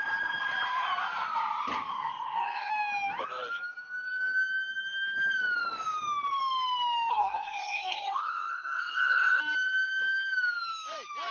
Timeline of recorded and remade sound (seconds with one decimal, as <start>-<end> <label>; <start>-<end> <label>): 0.0-1.9 recorded; 1.9-2.7 remade; 2.7-7.1 recorded; 7.1-9.4 remade; 9.4-11.3 recorded

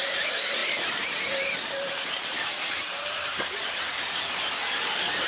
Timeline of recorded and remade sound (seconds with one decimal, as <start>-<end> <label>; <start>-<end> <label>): 0.0-0.6 recorded; 0.6-3.7 remade; 3.7-5.3 recorded

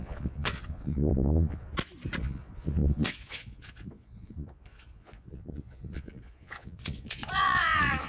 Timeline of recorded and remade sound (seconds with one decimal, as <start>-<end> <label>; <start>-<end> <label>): 0.0-1.7 remade; 1.7-2.2 recorded; 2.2-8.1 remade

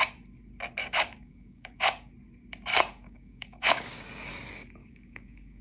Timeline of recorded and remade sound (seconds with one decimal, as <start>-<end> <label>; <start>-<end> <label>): 0.0-0.8 recorded; 0.8-2.1 remade; 2.1-2.7 recorded; 2.7-4.3 remade; 4.3-4.8 recorded; 4.8-5.6 remade

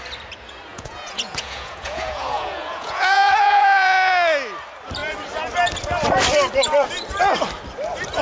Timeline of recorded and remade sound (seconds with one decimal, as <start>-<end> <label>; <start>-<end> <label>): 0.0-0.7 recorded; 0.7-4.1 remade; 4.1-8.2 recorded